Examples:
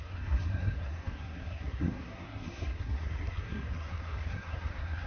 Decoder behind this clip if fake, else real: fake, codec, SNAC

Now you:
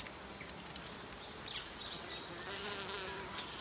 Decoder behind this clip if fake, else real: real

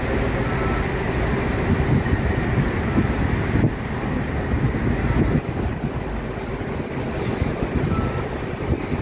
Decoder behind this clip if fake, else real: real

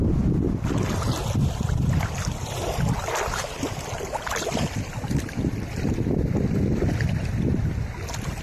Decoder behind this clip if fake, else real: real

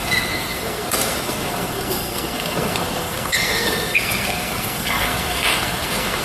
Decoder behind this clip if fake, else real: fake, codec, SNAC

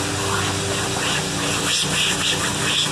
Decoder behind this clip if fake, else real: real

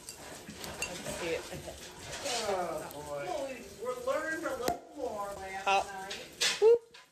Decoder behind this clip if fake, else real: real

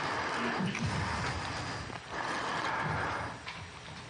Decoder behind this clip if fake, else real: real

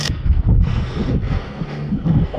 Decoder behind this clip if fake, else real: fake, codec, SNAC